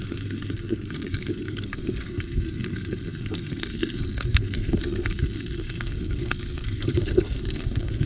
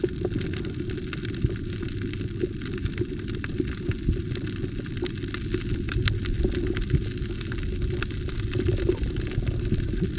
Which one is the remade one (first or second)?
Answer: first